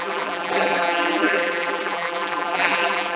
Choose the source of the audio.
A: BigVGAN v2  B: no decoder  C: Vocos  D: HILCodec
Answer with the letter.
A